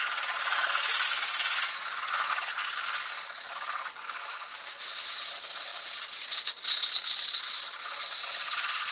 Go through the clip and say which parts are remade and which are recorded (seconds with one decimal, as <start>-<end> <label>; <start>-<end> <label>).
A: 0.0-4.2 recorded; 4.2-4.8 remade; 4.8-8.9 recorded